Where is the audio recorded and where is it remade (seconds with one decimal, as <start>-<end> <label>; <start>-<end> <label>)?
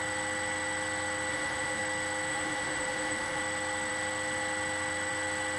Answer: 0.0-1.3 recorded; 1.3-1.8 remade; 1.8-2.3 recorded; 2.3-3.4 remade; 3.4-5.6 recorded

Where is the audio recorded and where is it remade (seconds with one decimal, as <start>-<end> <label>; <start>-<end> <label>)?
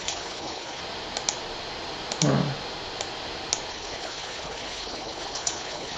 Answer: 0.0-0.8 remade; 0.8-3.7 recorded; 3.7-6.0 remade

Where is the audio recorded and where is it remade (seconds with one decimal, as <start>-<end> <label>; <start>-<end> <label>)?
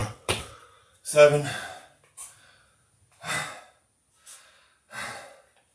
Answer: 0.0-0.6 remade; 0.6-5.7 recorded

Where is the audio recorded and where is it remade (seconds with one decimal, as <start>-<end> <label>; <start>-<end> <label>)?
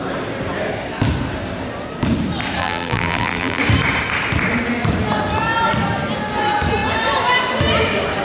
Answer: 0.0-2.6 recorded; 2.6-3.6 remade; 3.6-8.2 recorded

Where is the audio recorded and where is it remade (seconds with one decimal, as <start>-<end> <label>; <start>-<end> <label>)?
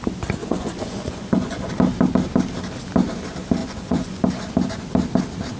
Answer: 0.0-0.4 recorded; 0.4-1.7 remade; 1.7-3.6 recorded; 3.6-4.2 remade; 4.2-5.6 recorded